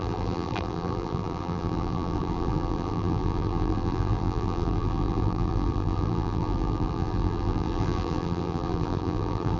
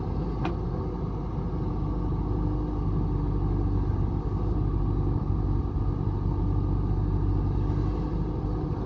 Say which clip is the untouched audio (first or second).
second